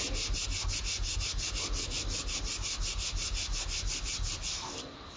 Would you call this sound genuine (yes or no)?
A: yes